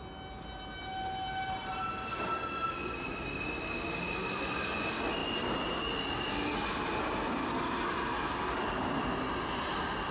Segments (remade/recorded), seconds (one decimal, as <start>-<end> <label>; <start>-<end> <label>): 0.0-10.1 recorded